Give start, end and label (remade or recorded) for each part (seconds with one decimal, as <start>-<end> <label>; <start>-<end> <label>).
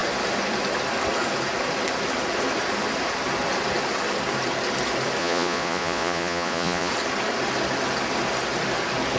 0.0-5.2 recorded; 5.2-6.9 remade; 6.9-9.2 recorded